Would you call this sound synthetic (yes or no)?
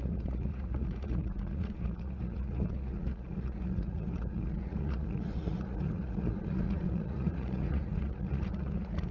yes